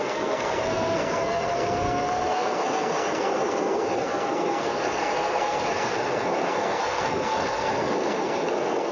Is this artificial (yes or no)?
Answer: yes